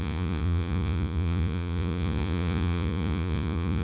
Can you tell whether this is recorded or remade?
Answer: remade